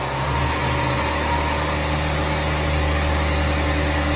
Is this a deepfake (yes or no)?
no